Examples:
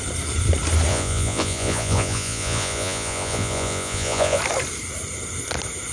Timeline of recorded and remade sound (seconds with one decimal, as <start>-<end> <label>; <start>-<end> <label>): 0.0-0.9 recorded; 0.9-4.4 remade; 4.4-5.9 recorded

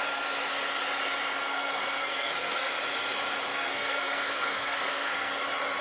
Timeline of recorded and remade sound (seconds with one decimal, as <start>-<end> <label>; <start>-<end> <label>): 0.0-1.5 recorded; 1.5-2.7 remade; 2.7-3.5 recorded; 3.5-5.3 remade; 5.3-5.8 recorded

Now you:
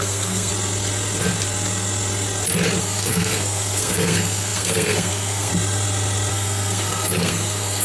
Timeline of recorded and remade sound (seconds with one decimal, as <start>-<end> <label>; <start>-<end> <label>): 0.0-0.5 remade; 0.5-2.8 recorded; 2.8-5.5 remade; 5.5-6.3 recorded; 6.3-7.8 remade

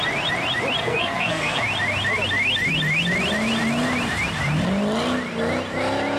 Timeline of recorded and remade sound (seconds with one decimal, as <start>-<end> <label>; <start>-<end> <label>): 0.0-0.8 recorded; 0.8-1.6 remade; 1.6-6.2 recorded

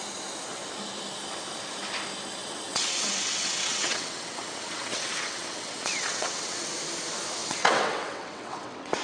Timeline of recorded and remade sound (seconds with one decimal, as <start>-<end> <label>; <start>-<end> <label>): 0.0-2.4 recorded; 2.4-6.7 remade; 6.7-7.4 recorded; 7.4-9.0 remade

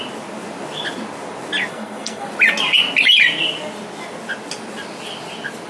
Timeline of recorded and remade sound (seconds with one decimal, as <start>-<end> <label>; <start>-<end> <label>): 0.0-1.7 recorded; 1.7-2.3 remade; 2.3-5.7 recorded